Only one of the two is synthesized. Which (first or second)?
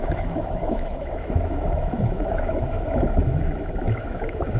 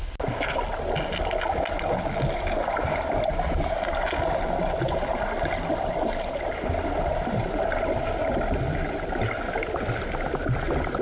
first